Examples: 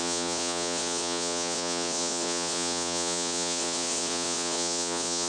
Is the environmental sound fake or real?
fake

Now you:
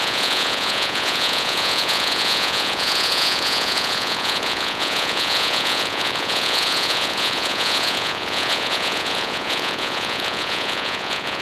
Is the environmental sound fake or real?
fake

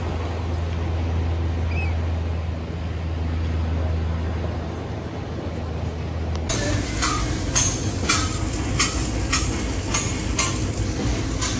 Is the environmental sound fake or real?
real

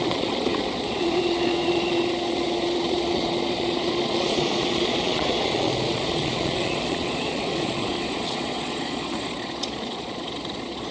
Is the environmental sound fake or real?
fake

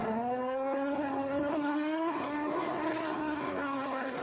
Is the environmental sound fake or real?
fake